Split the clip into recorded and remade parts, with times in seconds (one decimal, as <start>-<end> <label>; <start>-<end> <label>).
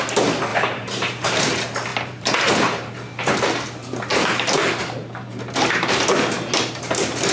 0.0-0.5 recorded; 0.5-1.4 remade; 1.4-1.9 recorded; 1.9-2.9 remade; 2.9-4.1 recorded; 4.1-6.0 remade; 6.0-7.3 recorded